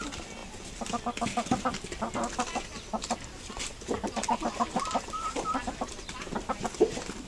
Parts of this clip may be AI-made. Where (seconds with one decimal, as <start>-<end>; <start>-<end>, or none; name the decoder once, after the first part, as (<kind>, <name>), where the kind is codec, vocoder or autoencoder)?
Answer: none